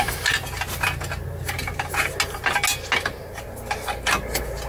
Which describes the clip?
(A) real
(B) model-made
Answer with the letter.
A